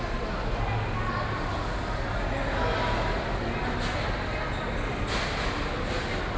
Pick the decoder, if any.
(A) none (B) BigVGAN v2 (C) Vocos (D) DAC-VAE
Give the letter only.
A